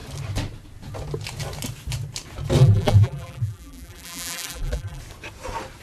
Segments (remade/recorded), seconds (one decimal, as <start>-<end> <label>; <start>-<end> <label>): 0.0-2.6 recorded; 2.6-5.0 remade; 5.0-5.8 recorded